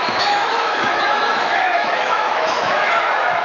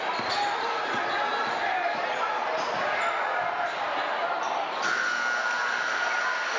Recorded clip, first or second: second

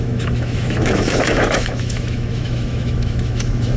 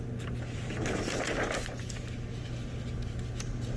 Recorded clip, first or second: second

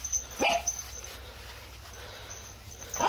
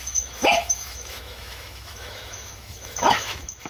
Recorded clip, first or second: first